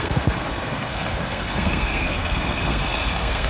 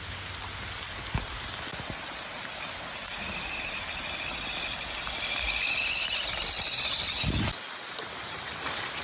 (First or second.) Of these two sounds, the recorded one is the second